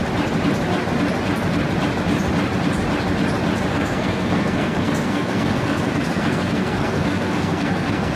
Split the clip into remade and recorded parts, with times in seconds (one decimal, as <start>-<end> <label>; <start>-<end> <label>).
0.0-3.7 recorded; 3.7-8.2 remade